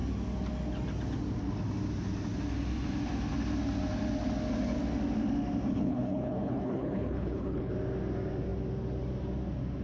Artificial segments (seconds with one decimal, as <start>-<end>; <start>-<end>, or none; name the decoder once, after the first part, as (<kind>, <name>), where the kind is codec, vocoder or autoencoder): 5.7-7.7 (codec, HILCodec)